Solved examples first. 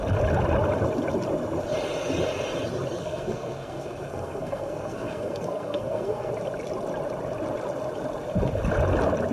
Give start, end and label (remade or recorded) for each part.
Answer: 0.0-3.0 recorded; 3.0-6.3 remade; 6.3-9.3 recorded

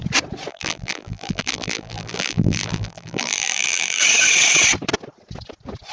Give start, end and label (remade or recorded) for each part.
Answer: 0.0-0.5 recorded; 0.5-4.0 remade; 4.0-5.9 recorded

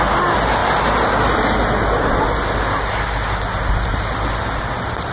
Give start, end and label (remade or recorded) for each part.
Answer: 0.0-5.1 recorded

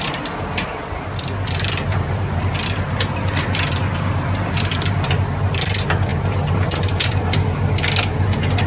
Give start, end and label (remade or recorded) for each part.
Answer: 0.0-8.7 recorded

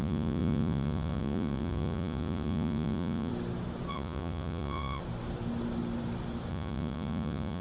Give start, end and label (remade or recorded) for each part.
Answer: 0.0-3.3 remade; 3.3-3.9 recorded; 3.9-5.0 remade; 5.0-6.5 recorded; 6.5-7.6 remade